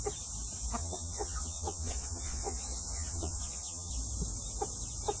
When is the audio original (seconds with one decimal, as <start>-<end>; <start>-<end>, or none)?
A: 0.0-0.8; 3.9-5.2